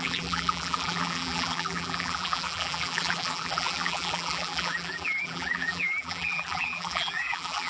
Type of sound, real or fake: fake